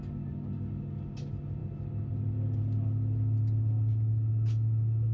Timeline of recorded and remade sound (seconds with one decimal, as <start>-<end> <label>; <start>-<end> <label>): 0.0-5.1 recorded